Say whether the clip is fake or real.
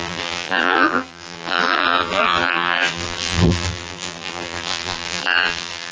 fake